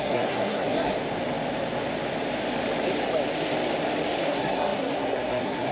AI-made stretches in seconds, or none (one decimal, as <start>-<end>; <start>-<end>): 0.0-0.9; 4.2-5.7